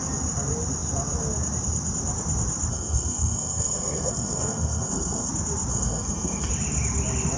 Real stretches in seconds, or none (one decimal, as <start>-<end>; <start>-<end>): 0.0-2.7; 5.3-5.7; 6.5-7.4